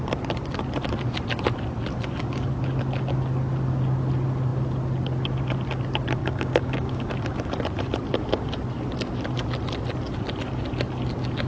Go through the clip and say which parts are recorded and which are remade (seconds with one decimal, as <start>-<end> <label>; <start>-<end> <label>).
0.0-6.2 recorded; 6.2-7.1 remade; 7.1-11.5 recorded